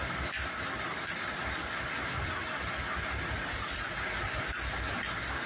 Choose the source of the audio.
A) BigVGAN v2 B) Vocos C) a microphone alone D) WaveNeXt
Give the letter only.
C